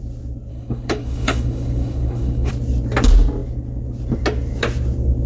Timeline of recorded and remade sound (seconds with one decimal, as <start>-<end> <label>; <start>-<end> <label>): 0.0-0.5 recorded; 0.5-2.5 remade; 2.5-5.3 recorded